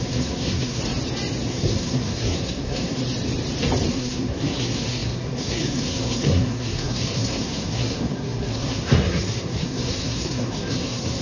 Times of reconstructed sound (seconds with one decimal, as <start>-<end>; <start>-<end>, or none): 0.0-0.8; 1.5-3.0; 3.9-11.2